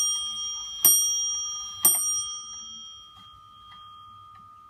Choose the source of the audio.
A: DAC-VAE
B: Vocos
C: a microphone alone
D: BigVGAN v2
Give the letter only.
C